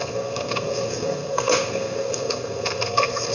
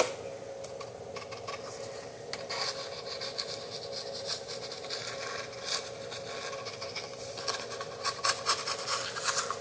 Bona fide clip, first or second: second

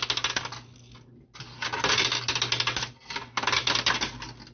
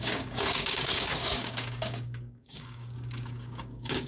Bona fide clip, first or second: first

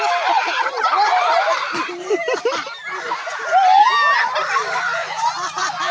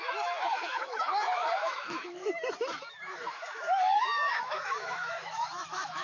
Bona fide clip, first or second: first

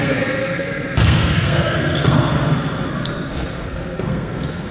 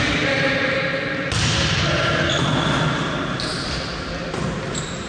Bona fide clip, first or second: second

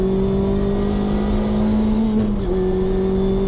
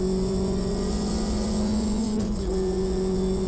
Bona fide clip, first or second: first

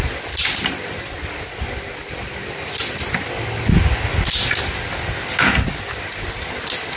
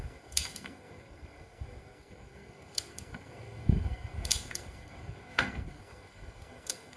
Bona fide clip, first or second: first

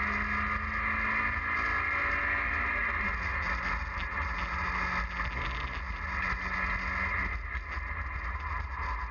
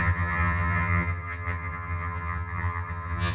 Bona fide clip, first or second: first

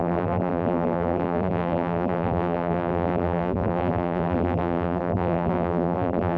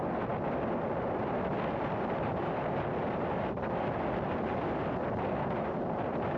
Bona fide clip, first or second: second